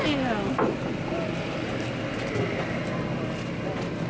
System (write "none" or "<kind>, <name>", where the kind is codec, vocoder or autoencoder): none